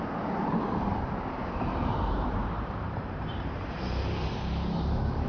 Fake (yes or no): yes